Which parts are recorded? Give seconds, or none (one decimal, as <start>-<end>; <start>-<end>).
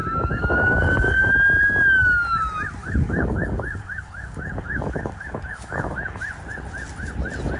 1.3-2.8; 6.2-7.6